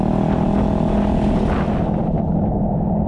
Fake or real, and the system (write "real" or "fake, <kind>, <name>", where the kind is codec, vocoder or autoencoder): real